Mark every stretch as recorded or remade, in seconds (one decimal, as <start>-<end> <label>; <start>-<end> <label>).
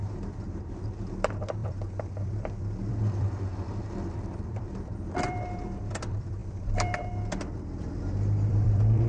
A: 0.0-3.5 remade; 3.5-4.4 recorded; 4.4-9.1 remade